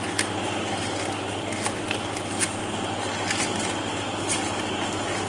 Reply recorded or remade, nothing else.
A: recorded